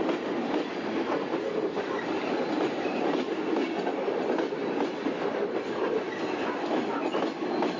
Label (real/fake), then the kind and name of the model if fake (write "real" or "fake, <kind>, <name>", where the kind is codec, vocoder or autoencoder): real